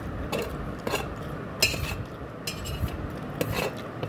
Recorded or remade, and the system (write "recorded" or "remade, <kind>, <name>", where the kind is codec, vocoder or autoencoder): recorded